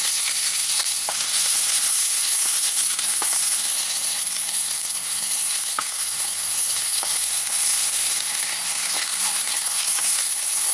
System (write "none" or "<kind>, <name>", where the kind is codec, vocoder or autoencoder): codec, SNAC